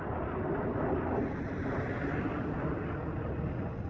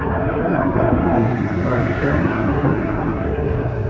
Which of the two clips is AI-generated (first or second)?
second